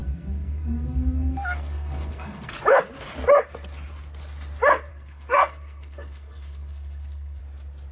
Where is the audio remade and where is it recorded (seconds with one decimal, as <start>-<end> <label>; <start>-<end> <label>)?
0.0-2.5 remade; 2.5-4.9 recorded; 4.9-7.4 remade; 7.4-7.9 recorded

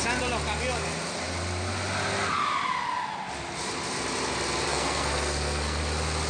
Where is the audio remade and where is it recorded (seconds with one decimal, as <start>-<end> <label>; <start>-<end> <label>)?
0.0-4.7 recorded; 4.7-5.8 remade; 5.8-6.3 recorded

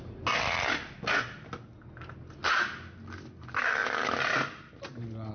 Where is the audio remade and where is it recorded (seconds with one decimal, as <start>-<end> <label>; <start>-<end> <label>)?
0.0-5.3 recorded